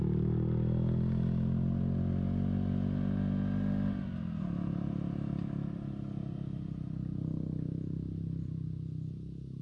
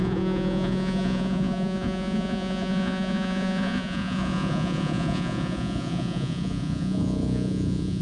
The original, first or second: first